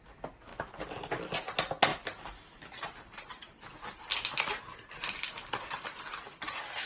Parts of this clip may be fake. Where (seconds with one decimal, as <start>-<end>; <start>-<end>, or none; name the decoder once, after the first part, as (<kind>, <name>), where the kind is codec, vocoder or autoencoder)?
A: none